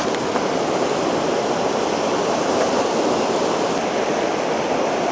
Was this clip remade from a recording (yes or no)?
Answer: no